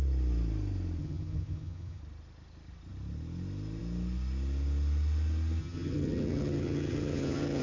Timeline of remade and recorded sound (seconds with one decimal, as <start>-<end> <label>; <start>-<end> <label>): 0.0-1.0 recorded; 1.0-2.0 remade; 2.0-5.6 recorded; 5.6-7.6 remade